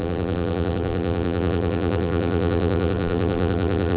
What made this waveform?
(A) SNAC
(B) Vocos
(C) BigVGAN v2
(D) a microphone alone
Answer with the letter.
C